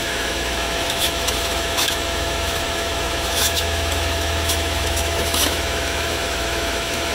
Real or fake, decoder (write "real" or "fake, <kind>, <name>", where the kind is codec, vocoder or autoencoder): fake, autoencoder, DAC-VAE